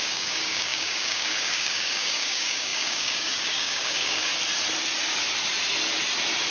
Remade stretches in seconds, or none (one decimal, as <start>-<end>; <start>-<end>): 0.0-4.3